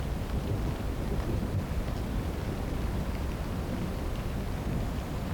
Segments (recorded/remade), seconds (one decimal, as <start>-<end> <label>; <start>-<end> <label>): 0.0-5.3 recorded